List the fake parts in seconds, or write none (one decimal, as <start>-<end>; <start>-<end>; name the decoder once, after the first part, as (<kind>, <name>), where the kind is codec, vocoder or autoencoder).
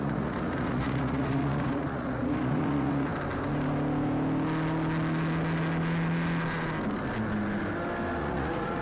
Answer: 0.0-3.1 (vocoder, Vocos); 8.2-8.8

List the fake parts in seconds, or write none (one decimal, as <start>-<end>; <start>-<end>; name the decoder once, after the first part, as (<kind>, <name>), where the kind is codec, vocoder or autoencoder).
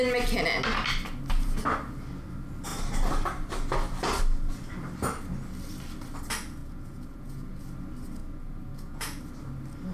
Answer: 6.6-7.6 (vocoder, Vocos); 8.2-9.2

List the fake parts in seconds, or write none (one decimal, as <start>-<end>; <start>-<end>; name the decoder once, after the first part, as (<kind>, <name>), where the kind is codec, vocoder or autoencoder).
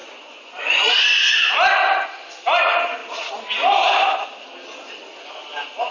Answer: 0.0-0.9 (vocoder, Vocos)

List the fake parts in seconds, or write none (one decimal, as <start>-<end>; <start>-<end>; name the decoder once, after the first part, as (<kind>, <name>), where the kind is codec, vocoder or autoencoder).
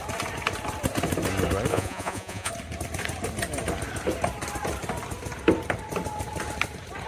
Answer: 1.7-2.5 (vocoder, Vocos)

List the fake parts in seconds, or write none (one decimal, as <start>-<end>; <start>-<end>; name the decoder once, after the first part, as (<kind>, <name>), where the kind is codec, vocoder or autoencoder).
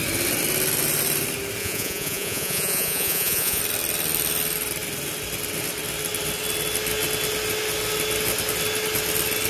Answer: 1.6-3.6 (vocoder, Vocos)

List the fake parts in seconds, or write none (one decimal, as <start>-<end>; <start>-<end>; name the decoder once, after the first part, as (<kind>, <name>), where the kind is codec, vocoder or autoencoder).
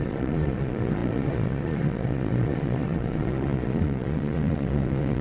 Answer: 0.0-5.2 (vocoder, Vocos)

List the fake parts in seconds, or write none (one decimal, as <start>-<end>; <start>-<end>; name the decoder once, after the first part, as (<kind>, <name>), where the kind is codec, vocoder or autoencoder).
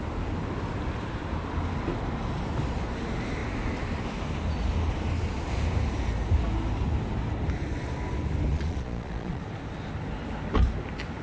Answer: 8.5-9.4 (vocoder, Vocos)